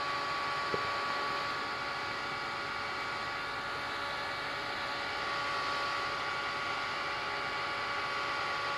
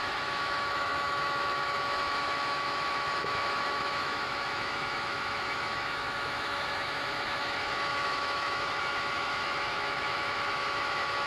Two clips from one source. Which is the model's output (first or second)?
second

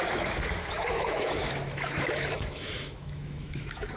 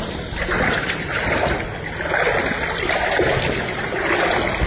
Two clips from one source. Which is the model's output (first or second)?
first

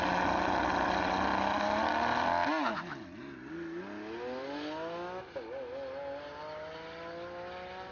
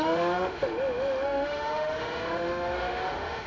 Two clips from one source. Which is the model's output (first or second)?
second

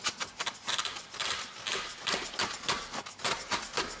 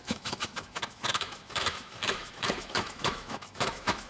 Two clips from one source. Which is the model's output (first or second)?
second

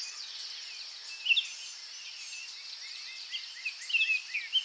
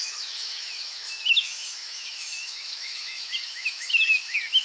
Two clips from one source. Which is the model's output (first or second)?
second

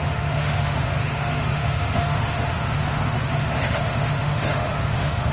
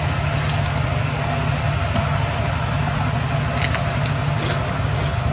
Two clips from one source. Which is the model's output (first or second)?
first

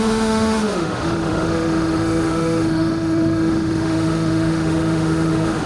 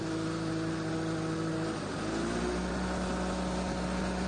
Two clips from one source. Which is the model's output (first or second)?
first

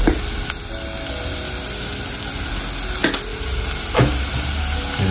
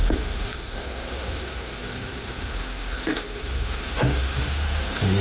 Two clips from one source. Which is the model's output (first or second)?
second